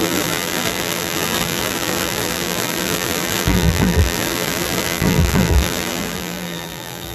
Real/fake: fake